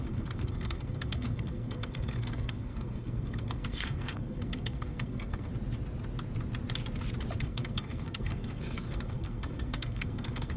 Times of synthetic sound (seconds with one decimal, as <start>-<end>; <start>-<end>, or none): 0.0-5.5; 7.4-10.6